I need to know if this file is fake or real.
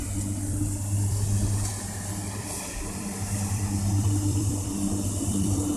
fake